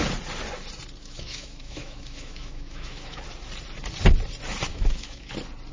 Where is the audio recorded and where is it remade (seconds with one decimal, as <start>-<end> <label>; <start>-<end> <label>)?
0.0-1.0 recorded; 1.0-3.2 remade; 3.2-4.7 recorded; 4.7-5.3 remade; 5.3-5.7 recorded